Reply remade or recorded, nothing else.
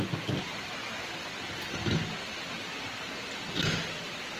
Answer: recorded